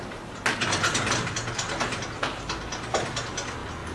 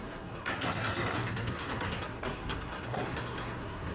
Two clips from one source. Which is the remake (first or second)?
second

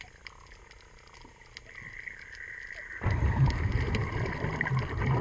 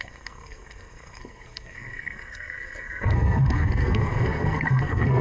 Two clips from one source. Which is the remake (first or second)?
second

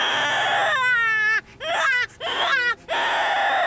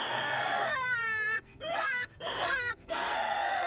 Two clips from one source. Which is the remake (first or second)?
second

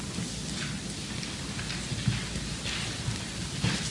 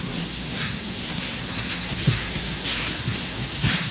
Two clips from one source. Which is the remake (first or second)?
second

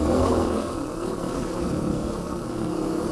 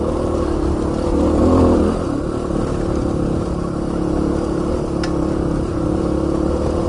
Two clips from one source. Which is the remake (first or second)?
first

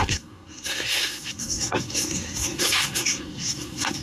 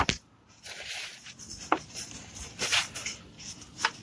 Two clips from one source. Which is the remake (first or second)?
first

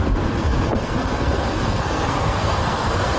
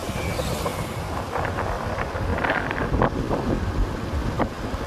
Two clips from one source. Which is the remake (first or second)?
first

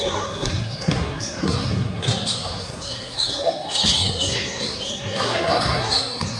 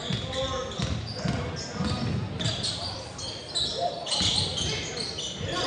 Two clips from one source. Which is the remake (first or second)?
first